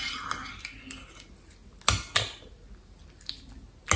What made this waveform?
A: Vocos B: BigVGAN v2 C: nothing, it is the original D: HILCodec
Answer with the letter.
C